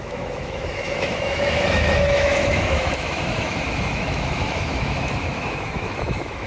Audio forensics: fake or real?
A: fake